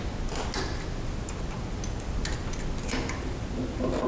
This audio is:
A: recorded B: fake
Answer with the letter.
A